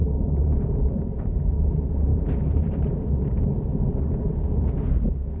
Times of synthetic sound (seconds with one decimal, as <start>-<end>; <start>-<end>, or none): 0.0-1.7; 2.1-5.4

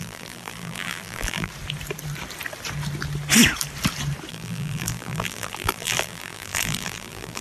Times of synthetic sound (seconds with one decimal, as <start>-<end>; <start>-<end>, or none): 0.0-1.5; 4.3-7.4

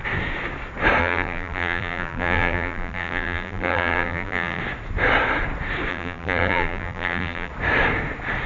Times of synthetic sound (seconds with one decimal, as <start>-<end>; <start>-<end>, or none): 1.0-4.6; 5.9-7.5

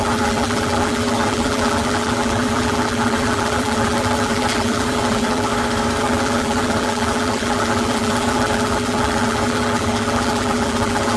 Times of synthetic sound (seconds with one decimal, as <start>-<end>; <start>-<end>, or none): 0.0-5.5; 6.0-11.2

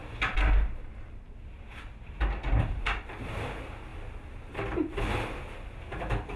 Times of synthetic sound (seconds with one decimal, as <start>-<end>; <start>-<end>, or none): 2.6-3.3; 3.9-5.0

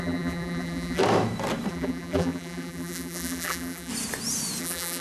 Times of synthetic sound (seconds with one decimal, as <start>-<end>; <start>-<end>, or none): 0.0-1.0; 1.7-3.9; 4.6-5.0